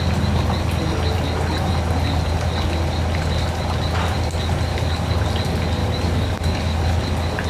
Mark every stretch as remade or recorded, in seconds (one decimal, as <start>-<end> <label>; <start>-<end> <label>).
0.0-4.7 recorded; 4.7-5.2 remade; 5.2-5.8 recorded; 5.8-7.1 remade; 7.1-7.5 recorded